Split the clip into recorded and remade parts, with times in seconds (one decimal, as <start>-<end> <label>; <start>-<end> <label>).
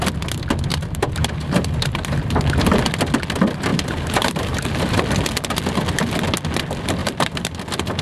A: 0.0-0.7 recorded; 0.7-2.8 remade; 2.8-3.7 recorded; 3.7-5.0 remade; 5.0-7.0 recorded; 7.0-7.6 remade; 7.6-8.0 recorded